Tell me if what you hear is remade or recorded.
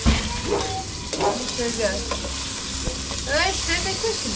recorded